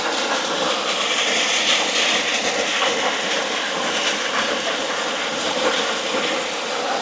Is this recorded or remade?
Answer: recorded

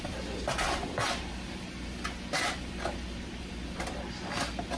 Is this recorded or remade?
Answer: recorded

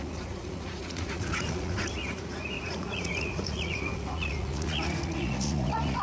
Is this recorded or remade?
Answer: remade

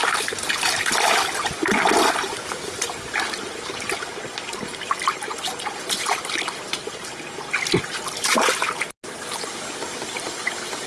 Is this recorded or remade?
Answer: recorded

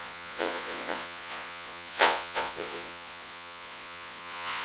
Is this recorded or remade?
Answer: remade